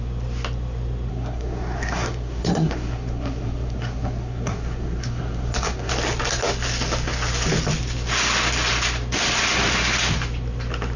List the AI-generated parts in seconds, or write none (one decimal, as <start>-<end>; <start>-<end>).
1.1-5.9